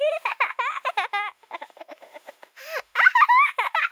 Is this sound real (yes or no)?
no